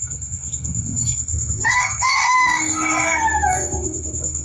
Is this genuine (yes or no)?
no